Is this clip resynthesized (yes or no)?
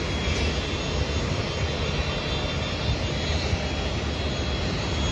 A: no